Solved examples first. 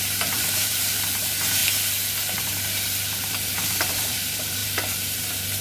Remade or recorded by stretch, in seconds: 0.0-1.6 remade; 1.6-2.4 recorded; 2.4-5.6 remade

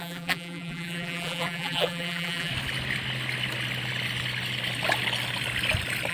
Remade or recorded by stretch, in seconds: 0.0-2.5 remade; 2.5-6.1 recorded

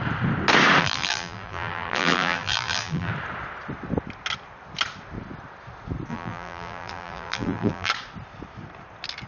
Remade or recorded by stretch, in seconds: 0.0-0.8 recorded; 0.8-3.1 remade; 3.1-6.1 recorded; 6.1-7.9 remade; 7.9-9.3 recorded

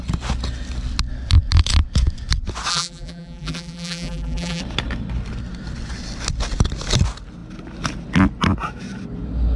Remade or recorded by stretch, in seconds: 0.0-2.7 recorded; 2.7-4.6 remade; 4.6-9.6 recorded